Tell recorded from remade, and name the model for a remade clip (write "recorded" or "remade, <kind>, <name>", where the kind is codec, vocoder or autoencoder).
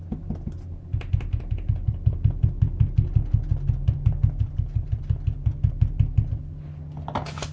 recorded